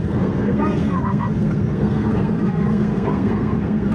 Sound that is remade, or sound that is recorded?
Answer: remade